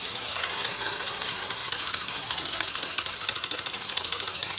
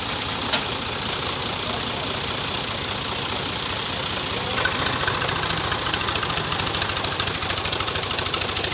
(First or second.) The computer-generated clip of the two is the first